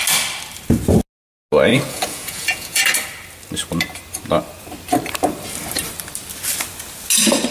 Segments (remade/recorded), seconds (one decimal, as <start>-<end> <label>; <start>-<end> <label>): 0.0-1.7 recorded; 1.7-2.8 remade; 2.8-7.5 recorded